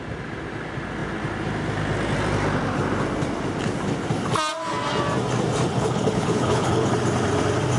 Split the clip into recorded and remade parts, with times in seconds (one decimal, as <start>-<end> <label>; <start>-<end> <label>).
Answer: 0.0-5.7 recorded; 5.7-6.9 remade; 6.9-7.8 recorded